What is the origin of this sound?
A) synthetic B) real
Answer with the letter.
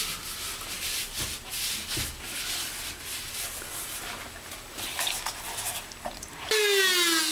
B